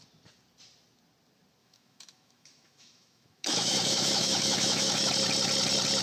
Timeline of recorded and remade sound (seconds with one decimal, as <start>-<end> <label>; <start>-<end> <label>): 0.0-1.6 recorded; 1.6-5.1 remade; 5.1-6.0 recorded